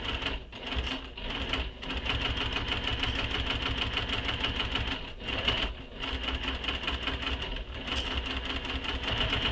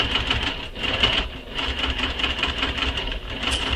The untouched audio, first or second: first